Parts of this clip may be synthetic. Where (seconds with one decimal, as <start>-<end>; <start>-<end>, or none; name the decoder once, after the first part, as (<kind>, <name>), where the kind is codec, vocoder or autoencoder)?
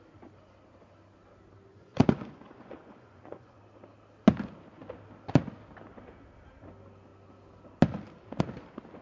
1.7-3.6 (vocoder, Vocos)